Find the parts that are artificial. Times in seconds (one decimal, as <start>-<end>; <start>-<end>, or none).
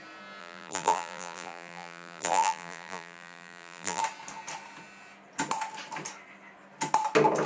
0.4-4.0